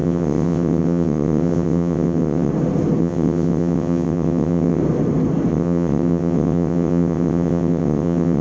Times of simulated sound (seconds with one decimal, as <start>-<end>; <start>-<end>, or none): 0.0-2.5; 3.0-4.8; 5.5-8.4